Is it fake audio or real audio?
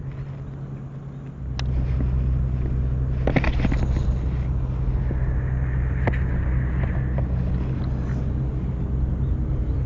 real